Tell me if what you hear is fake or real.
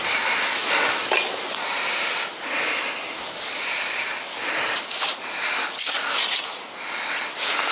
real